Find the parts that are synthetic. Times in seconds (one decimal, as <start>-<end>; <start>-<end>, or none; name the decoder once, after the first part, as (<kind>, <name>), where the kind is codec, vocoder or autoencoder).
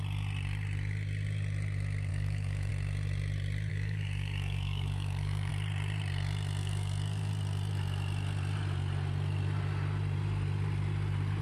2.1-2.7 (codec, DAC); 3.7-5.5; 6.6-7.3